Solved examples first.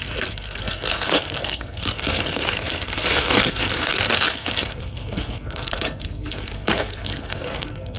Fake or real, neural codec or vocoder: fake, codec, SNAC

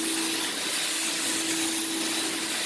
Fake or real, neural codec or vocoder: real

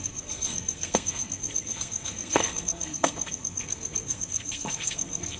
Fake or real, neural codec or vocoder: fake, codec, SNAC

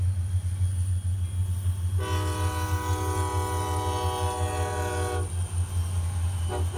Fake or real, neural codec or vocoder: real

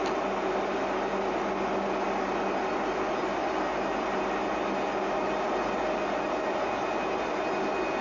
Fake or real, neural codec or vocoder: real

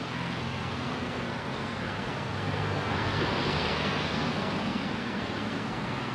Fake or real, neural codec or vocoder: fake, codec, SNAC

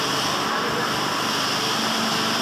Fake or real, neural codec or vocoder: real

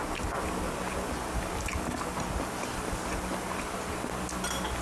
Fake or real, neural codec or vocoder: real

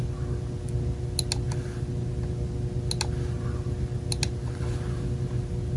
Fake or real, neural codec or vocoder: real